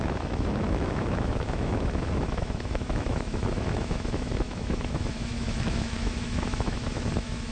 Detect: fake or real fake